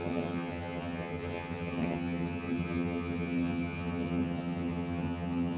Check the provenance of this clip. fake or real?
fake